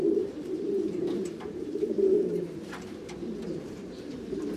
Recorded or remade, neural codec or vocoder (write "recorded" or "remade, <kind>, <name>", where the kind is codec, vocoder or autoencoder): remade, vocoder, BigVGAN v2